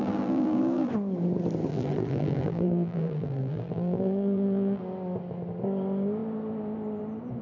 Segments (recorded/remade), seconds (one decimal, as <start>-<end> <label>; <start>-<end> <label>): 0.0-0.9 remade; 0.9-1.7 recorded; 1.7-4.8 remade; 4.8-7.4 recorded